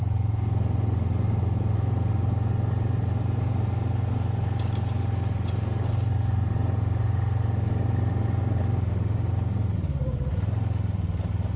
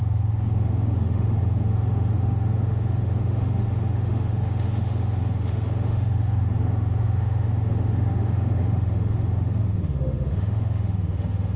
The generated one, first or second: second